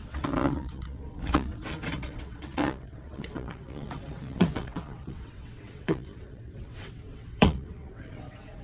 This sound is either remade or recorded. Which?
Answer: remade